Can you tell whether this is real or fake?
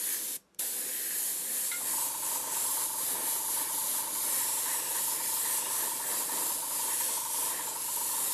real